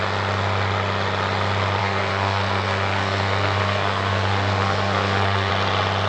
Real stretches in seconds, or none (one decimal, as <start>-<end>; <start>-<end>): 0.0-1.8; 5.5-6.1